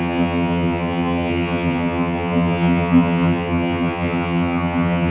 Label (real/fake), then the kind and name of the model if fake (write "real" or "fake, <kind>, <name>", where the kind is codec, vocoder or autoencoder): fake, vocoder, HiFi-GAN